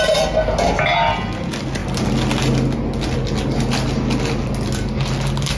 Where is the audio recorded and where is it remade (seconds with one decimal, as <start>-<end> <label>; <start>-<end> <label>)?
0.0-5.6 recorded